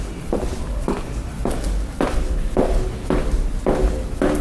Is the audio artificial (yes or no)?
no